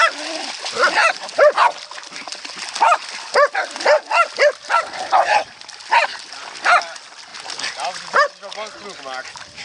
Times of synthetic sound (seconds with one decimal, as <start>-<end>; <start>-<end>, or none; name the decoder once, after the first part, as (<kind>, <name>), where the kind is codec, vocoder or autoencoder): none